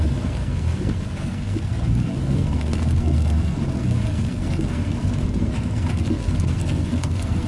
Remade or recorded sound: remade